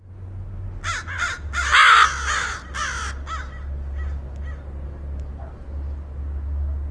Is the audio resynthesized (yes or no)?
no